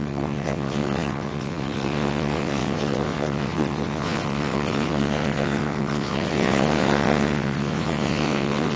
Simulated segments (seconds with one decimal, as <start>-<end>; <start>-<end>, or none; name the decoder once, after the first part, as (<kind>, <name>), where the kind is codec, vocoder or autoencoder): 0.0-8.8 (vocoder, WaveNeXt)